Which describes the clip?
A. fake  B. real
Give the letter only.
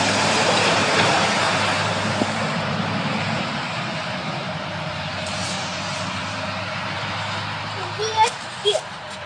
A